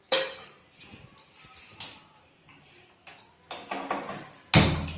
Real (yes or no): yes